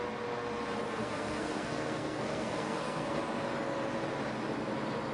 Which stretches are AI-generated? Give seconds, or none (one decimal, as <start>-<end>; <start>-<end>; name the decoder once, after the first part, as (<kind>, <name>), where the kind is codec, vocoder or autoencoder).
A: 1.0-3.2 (codec, SNAC)